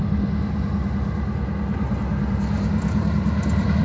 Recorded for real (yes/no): yes